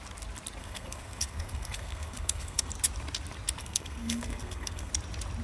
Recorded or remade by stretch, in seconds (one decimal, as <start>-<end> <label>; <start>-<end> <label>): 0.0-0.6 recorded; 0.6-2.7 remade; 2.7-3.6 recorded; 3.6-4.9 remade; 4.9-5.4 recorded